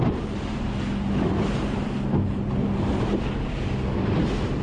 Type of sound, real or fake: real